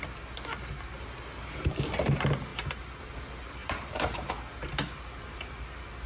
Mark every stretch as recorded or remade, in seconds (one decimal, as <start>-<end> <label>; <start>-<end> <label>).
0.0-2.5 recorded; 2.5-3.2 remade; 3.2-3.6 recorded; 3.6-4.3 remade; 4.3-6.1 recorded